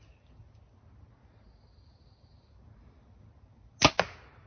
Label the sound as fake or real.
real